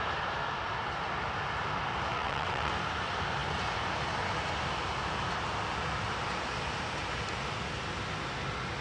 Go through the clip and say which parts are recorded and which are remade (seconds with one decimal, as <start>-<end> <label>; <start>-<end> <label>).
0.0-2.1 recorded; 2.1-2.7 remade; 2.7-8.8 recorded